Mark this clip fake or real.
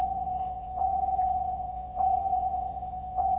fake